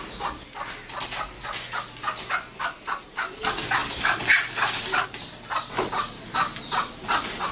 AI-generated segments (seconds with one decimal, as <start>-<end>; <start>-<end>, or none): none